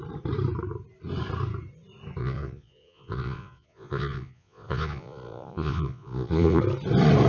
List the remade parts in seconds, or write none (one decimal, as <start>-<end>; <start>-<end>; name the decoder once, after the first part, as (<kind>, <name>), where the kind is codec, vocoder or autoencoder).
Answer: 2.2-6.6 (vocoder, Vocos)